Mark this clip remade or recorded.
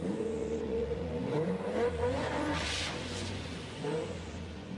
remade